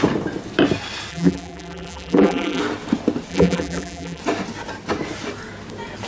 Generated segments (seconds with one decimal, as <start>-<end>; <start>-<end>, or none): 1.1-2.6; 3.3-4.2